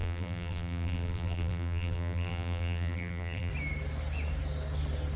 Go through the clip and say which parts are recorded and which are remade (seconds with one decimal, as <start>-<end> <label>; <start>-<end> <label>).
0.0-3.5 remade; 3.5-5.2 recorded